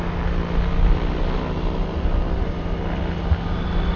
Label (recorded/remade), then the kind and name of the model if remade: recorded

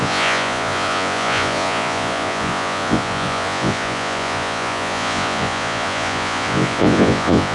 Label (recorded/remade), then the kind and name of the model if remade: remade, vocoder, Vocos